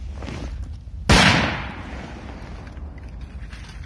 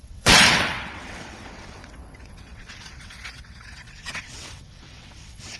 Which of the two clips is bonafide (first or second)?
first